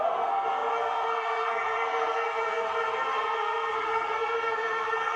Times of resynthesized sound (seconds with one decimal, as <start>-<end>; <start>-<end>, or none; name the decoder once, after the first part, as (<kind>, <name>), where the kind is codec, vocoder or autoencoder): 0.0-5.2 (codec, SNAC)